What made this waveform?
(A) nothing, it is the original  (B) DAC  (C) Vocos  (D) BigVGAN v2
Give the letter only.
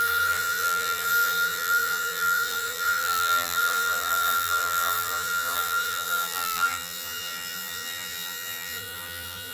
D